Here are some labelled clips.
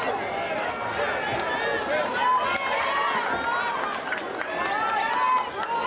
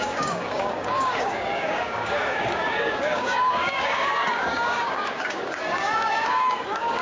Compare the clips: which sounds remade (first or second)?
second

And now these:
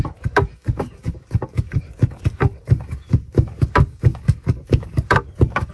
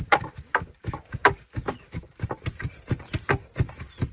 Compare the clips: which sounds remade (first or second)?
first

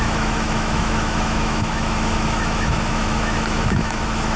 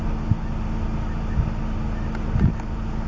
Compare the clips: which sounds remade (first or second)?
first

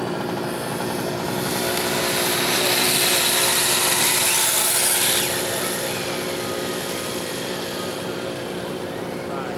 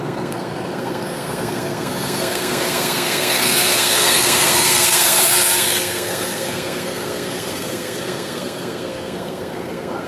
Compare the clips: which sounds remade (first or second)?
second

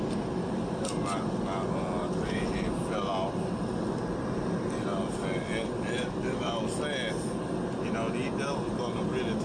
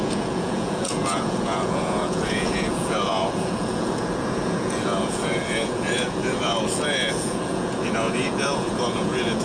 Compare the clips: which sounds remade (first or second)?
second